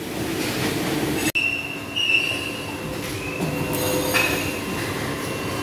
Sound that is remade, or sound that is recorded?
recorded